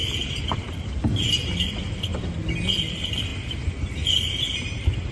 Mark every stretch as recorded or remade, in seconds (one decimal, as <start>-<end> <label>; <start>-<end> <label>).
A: 0.0-1.7 recorded; 1.7-2.1 remade; 2.1-2.7 recorded; 2.7-3.3 remade; 3.3-5.1 recorded